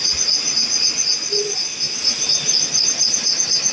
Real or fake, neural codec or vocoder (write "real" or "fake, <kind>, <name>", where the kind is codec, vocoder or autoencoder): real